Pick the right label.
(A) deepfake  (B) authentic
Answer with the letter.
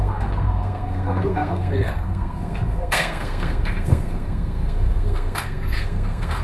A